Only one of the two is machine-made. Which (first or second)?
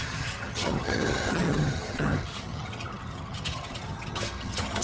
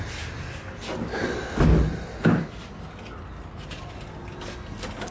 first